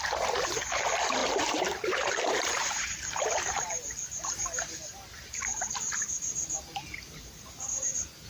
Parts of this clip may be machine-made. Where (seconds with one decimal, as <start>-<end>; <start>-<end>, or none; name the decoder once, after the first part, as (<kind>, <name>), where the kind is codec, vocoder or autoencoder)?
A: 0.0-8.3 (vocoder, BigVGAN v2)